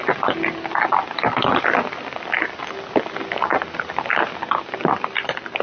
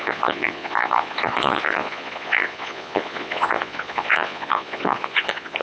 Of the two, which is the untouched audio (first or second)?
first